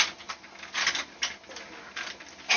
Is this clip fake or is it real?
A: real